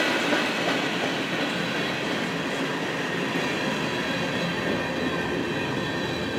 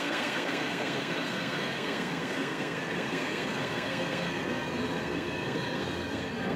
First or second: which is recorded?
first